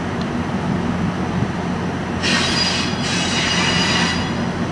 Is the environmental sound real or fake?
real